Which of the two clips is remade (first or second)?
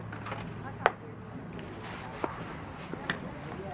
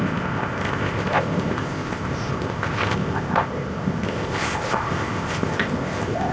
second